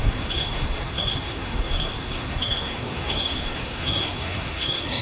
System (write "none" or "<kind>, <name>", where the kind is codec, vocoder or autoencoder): codec, SNAC